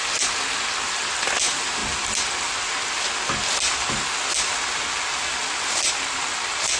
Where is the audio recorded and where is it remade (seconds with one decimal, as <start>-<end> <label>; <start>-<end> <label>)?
0.0-6.8 recorded